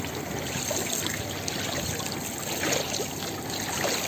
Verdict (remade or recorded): recorded